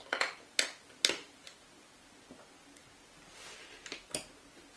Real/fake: real